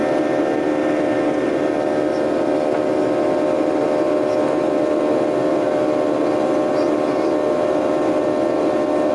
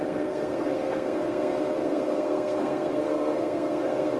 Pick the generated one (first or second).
second